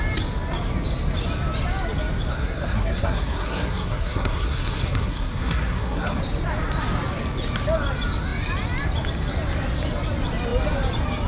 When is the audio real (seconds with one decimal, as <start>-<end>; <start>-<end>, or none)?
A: 0.0-2.3; 6.2-11.3